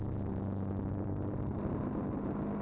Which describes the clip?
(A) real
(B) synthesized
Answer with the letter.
A